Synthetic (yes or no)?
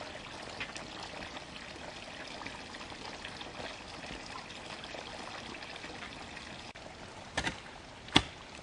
no